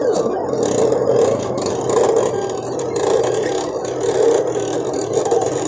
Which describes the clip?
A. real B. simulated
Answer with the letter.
A